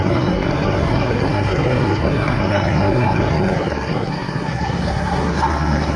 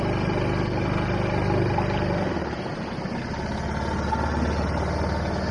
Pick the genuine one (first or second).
second